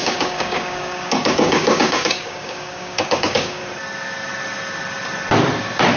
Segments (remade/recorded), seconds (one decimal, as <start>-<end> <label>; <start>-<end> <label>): 0.0-3.6 remade; 3.6-6.0 recorded